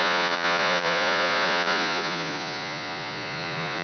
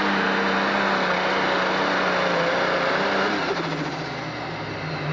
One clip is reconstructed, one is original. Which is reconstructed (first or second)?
first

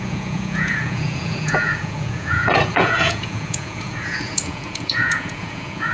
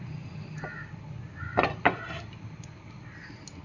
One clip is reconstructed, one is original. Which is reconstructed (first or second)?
first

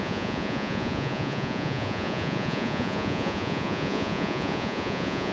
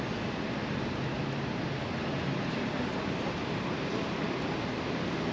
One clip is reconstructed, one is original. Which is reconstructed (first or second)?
first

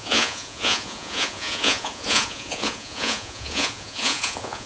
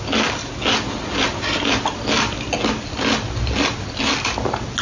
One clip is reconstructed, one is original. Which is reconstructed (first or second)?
first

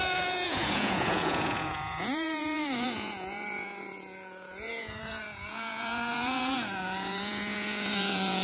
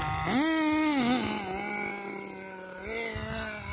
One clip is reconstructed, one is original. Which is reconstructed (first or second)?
first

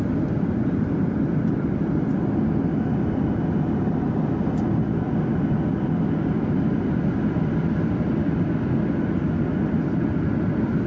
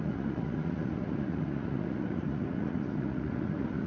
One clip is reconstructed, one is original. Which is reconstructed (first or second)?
second